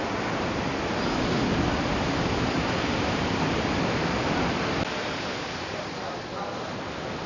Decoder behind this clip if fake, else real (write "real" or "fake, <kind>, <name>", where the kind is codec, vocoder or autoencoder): real